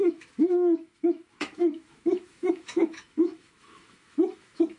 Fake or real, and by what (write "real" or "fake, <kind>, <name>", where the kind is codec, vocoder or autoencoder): fake, autoencoder, DAC-VAE